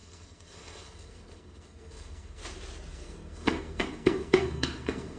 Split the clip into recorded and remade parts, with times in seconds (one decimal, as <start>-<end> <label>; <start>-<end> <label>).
0.0-2.4 remade; 2.4-2.9 recorded; 2.9-5.2 remade